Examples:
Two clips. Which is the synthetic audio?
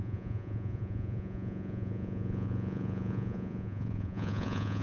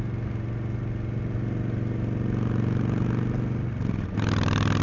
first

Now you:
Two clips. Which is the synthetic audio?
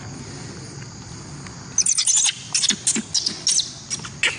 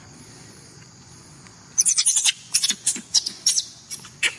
second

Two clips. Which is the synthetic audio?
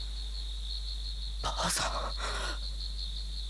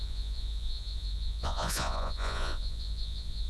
second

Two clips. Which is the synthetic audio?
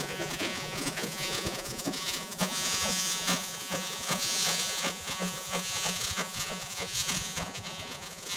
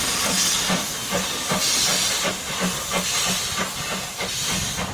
first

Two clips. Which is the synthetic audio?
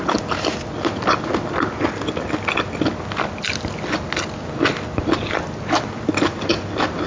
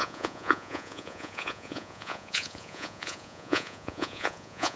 second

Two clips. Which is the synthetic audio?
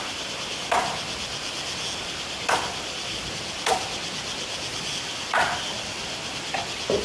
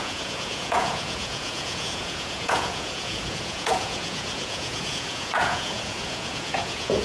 second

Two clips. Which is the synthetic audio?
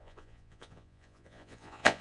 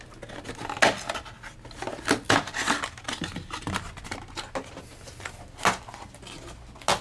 first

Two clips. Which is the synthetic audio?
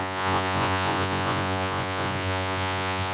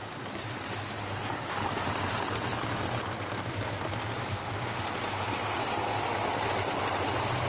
first